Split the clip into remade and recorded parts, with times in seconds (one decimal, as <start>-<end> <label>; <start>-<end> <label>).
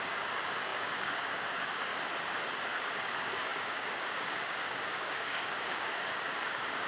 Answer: 0.0-1.9 remade; 1.9-2.5 recorded; 2.5-6.9 remade